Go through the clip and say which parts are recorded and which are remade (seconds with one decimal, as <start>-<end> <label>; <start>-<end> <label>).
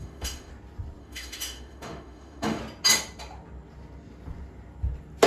0.0-0.5 remade; 0.5-1.0 recorded; 1.0-2.6 remade; 2.6-5.3 recorded